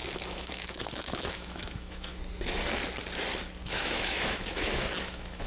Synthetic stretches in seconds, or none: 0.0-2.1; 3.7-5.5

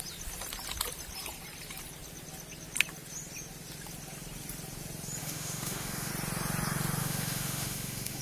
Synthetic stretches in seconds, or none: 5.2-6.1; 7.0-8.2

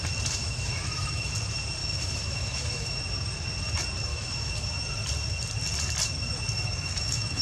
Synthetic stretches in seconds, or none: 0.4-1.3; 1.8-3.0; 4.1-4.7; 6.7-7.4